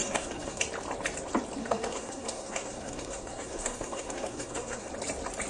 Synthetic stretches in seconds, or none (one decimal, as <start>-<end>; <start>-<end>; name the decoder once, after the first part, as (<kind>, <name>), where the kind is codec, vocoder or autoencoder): 0.0-0.6 (codec, SNAC); 1.6-4.9